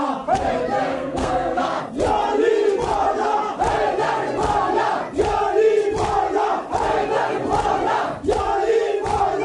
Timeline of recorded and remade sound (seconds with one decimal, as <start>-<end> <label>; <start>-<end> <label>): 0.0-0.9 recorded; 0.9-1.8 remade; 1.8-9.4 recorded